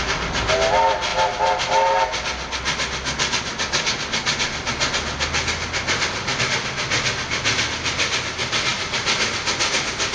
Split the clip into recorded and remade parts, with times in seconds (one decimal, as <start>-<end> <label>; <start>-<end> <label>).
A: 0.0-10.1 recorded